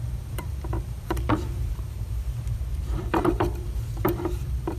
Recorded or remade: remade